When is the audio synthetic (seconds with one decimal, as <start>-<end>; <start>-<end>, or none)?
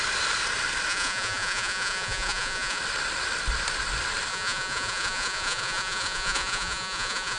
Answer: 0.9-2.8; 4.3-7.4